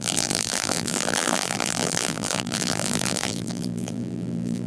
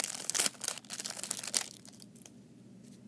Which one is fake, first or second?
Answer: first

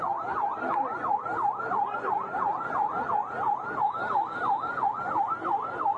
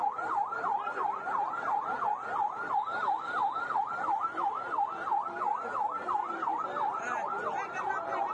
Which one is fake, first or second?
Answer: second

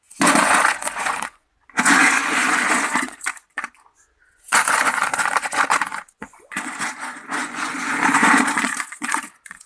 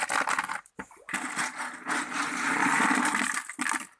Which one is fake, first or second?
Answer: first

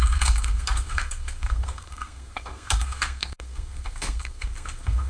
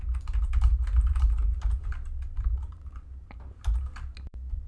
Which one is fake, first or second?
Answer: first